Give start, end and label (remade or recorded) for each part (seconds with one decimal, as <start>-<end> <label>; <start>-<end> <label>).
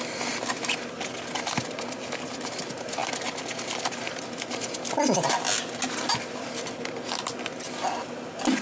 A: 0.0-8.6 recorded